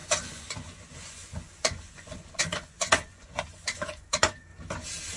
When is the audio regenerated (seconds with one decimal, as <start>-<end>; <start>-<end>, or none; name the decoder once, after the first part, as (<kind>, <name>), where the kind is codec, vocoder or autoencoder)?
0.0-4.5 (vocoder, Vocos)